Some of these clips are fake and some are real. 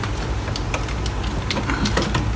real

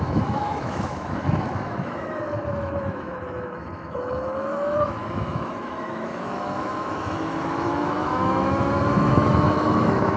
fake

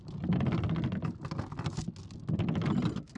real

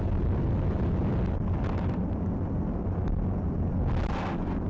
real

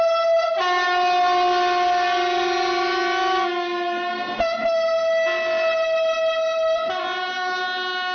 real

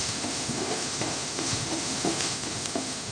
fake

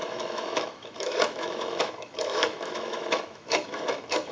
fake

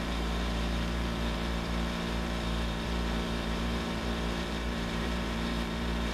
fake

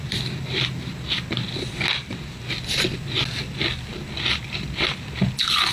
real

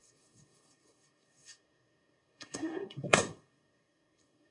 fake